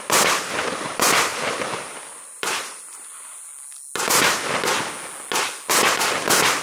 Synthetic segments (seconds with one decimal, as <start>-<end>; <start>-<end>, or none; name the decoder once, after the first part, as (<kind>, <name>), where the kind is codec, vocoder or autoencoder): 0.0-3.5 (vocoder, BigVGAN v2); 5.7-6.6